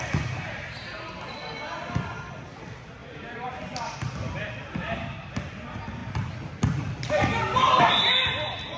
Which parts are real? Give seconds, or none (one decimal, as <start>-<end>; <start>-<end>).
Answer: 0.0-3.0; 5.5-8.8